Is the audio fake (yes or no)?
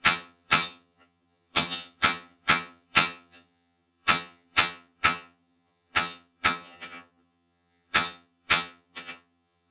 yes